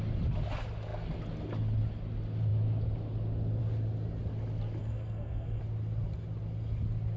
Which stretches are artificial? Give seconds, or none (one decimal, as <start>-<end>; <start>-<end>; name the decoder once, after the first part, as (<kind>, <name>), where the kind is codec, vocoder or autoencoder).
4.8-5.6 (codec, SNAC)